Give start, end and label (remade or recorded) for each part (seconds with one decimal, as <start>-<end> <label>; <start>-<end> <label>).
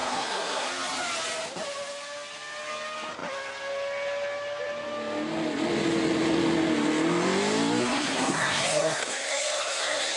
0.0-0.7 remade; 0.7-7.8 recorded; 7.8-10.2 remade